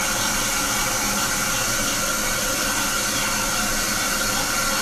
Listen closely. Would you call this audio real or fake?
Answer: real